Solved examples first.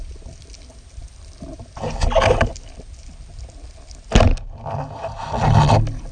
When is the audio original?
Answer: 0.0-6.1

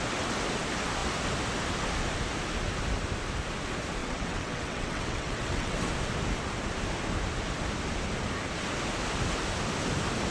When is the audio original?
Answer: 0.0-4.0; 5.9-10.3

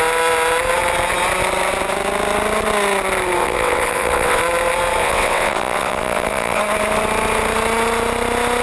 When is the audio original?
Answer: 0.0-3.4; 4.4-5.0; 6.6-8.6

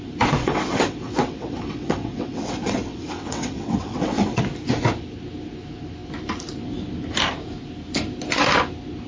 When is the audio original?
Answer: 0.0-0.4; 4.4-9.1

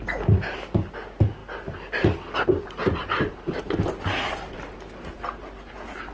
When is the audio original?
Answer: 0.0-6.1

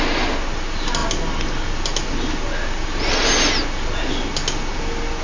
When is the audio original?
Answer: 0.0-5.2